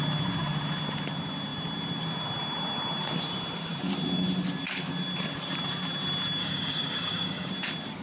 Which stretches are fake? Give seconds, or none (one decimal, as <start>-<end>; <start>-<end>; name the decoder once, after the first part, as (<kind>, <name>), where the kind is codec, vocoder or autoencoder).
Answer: 6.4-7.5 (codec, DAC)